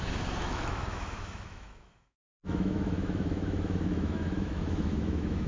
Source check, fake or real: fake